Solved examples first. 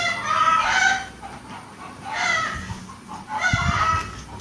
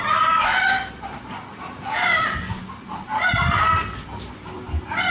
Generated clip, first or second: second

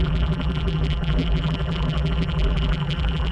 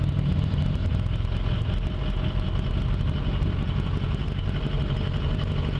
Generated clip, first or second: first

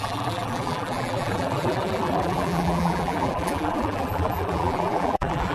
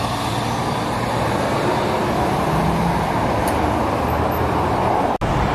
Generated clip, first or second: first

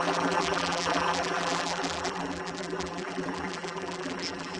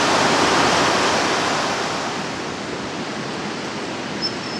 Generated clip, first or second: first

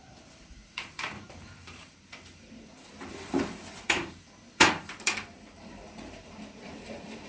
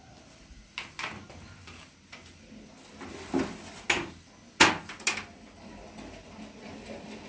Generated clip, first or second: first